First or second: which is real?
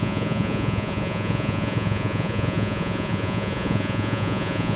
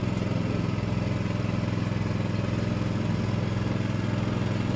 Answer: second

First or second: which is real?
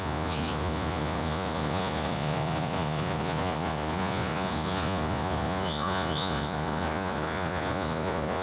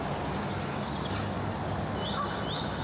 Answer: second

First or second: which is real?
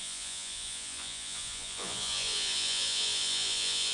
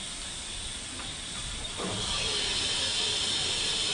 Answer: second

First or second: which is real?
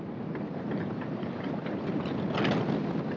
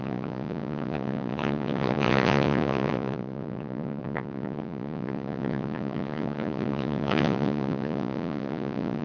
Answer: first